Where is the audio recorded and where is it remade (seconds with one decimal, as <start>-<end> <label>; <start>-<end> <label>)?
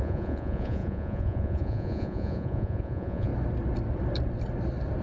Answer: 0.0-3.3 remade; 3.3-5.0 recorded